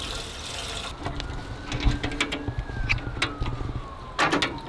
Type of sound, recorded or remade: recorded